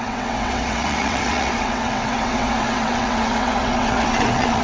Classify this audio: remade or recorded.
remade